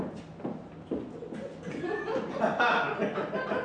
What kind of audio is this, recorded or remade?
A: recorded